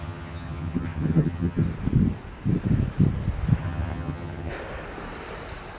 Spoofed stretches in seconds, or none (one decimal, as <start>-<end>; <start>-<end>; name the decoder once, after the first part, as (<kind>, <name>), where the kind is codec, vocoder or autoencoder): 0.0-1.6 (vocoder, HiFi-GAN); 3.6-4.5